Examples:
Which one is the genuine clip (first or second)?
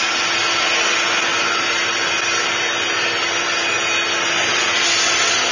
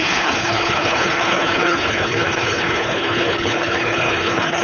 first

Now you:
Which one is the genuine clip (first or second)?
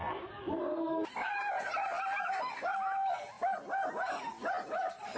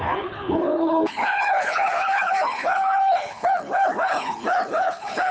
first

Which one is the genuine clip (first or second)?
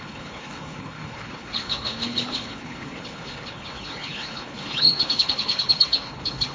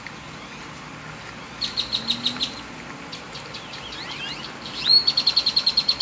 second